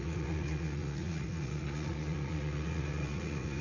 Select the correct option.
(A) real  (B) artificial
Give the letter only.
B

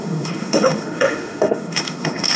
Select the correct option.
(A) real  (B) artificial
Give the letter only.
B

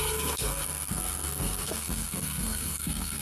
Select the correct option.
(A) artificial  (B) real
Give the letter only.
A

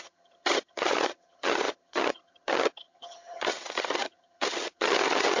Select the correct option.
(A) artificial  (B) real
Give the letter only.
A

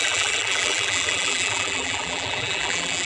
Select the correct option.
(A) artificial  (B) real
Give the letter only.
A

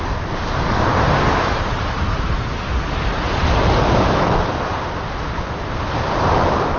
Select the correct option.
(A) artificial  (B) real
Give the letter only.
B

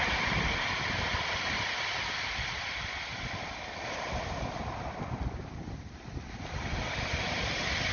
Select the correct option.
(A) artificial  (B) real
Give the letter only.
B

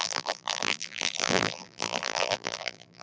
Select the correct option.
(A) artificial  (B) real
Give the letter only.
A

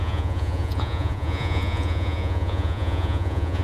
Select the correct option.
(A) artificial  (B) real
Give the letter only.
A